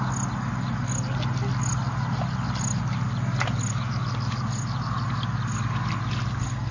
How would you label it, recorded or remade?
recorded